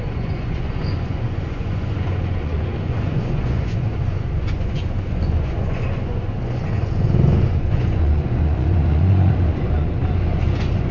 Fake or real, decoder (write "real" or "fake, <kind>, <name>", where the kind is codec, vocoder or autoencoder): fake, vocoder, Vocos